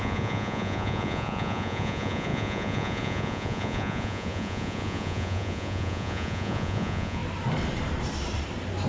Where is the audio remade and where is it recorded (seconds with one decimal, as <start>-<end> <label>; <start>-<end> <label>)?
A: 0.0-7.2 remade; 7.2-8.9 recorded